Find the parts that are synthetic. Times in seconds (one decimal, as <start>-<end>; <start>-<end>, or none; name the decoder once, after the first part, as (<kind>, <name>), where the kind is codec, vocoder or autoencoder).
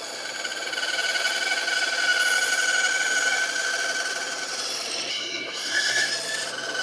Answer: 5.1-6.1 (codec, SNAC)